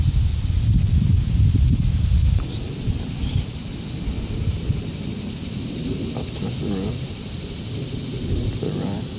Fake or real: fake